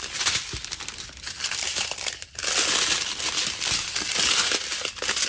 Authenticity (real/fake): real